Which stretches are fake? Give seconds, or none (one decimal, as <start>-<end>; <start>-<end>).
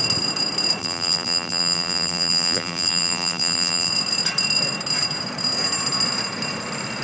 0.8-3.9